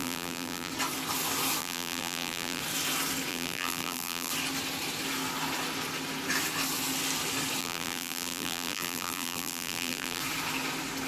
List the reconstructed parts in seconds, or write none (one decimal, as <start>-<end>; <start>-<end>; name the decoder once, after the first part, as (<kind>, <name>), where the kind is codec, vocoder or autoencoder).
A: 0.0-0.7 (vocoder, BigVGAN v2); 1.6-2.6; 3.3-4.3; 7.6-10.2